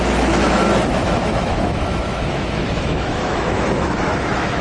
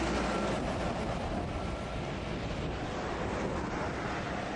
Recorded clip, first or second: second